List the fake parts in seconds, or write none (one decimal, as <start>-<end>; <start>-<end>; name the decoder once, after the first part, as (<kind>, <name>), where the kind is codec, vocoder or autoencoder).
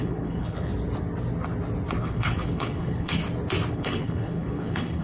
0.0-0.7 (codec, HILCodec); 2.0-3.2; 3.7-5.0